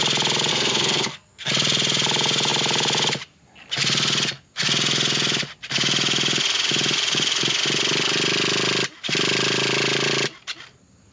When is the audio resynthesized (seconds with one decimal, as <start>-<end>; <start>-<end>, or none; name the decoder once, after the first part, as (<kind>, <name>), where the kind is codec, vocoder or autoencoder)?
0.5-1.5 (codec, SNAC)